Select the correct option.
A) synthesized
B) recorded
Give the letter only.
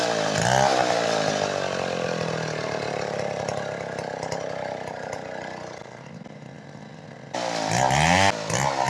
B